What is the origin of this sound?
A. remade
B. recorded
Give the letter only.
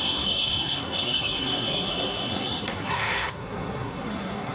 A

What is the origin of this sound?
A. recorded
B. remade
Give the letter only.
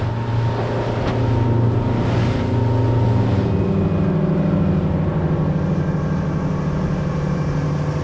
A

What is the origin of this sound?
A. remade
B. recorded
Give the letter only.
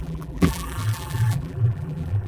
A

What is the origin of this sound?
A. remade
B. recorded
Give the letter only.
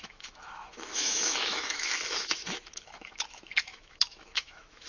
A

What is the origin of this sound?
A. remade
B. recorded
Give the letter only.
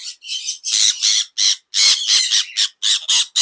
B